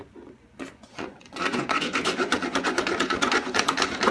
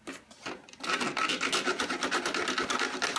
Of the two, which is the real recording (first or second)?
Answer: second